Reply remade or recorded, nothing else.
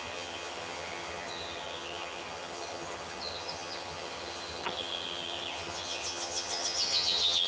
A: remade